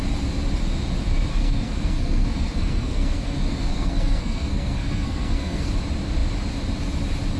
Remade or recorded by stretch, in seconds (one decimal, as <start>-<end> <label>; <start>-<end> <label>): 0.0-1.3 recorded; 1.3-5.7 remade; 5.7-7.4 recorded